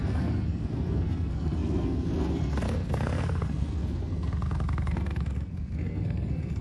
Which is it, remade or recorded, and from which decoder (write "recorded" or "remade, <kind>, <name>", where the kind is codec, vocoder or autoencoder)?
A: remade, codec, SNAC